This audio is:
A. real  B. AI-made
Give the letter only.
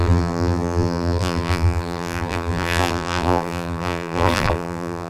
B